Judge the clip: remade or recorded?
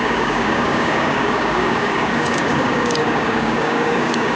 remade